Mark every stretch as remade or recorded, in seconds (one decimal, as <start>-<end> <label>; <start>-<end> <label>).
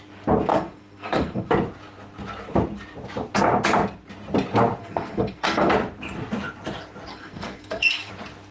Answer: 0.0-0.5 recorded; 0.5-1.5 remade; 1.5-4.8 recorded; 4.8-5.7 remade; 5.7-7.1 recorded; 7.1-8.1 remade; 8.1-8.5 recorded